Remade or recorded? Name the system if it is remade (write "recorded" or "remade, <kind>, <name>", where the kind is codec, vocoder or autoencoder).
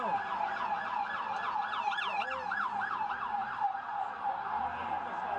recorded